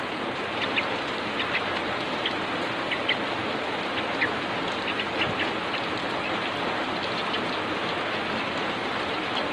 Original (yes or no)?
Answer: yes